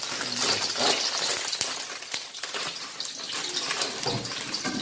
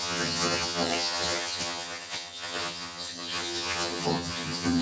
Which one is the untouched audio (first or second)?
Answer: first